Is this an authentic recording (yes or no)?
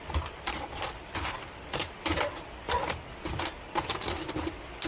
no